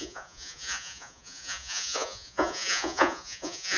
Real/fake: fake